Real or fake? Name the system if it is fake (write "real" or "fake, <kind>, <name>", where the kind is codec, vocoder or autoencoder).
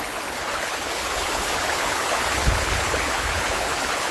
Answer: fake, codec, HILCodec